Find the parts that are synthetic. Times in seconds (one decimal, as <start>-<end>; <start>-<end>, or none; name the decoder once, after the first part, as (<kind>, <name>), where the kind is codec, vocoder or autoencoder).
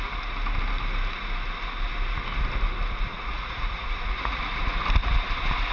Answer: 3.1-4.4 (vocoder, Vocos)